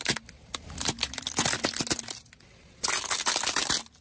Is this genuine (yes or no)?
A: yes